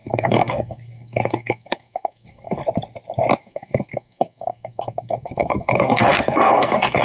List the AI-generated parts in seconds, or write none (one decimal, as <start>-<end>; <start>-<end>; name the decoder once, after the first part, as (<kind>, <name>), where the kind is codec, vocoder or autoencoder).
0.0-2.6 (codec, SNAC); 3.4-7.0